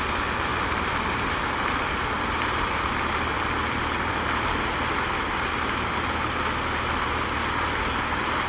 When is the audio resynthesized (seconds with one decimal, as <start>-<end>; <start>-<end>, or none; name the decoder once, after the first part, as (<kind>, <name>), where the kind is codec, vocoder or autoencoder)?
none